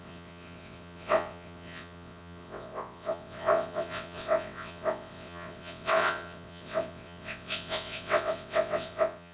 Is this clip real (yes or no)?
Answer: no